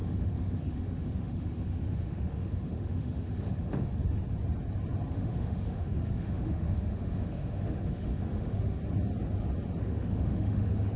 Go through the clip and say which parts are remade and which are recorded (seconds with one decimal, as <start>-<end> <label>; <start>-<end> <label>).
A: 0.0-3.9 remade; 3.9-5.1 recorded; 5.1-8.8 remade; 8.8-9.8 recorded; 9.8-11.0 remade